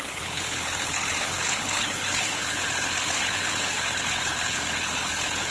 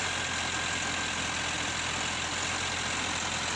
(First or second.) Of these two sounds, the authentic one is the second